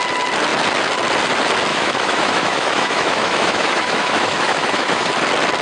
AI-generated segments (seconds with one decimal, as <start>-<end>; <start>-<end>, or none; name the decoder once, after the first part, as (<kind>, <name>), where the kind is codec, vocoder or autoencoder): 1.7-5.1 (autoencoder, DAC-VAE)